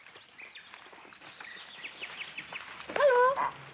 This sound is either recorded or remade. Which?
recorded